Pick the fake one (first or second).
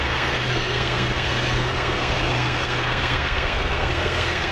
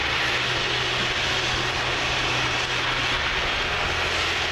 first